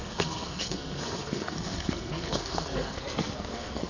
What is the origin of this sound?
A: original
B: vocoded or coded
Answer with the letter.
B